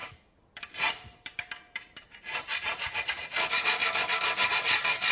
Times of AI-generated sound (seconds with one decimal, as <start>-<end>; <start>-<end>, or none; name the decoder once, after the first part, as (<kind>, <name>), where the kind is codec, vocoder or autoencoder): 0.0-5.1 (vocoder, BigVGAN v2)